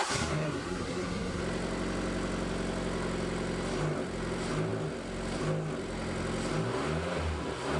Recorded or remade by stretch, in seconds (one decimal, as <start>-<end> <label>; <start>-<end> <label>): 0.0-1.4 remade; 1.4-7.8 recorded